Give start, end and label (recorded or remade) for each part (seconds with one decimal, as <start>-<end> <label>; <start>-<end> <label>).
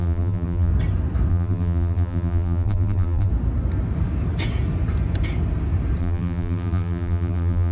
0.0-0.7 remade; 0.7-1.3 recorded; 1.3-3.3 remade; 3.3-6.0 recorded; 6.0-7.7 remade